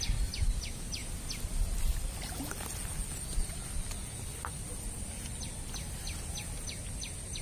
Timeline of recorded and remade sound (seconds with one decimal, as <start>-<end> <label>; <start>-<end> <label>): 0.0-7.4 recorded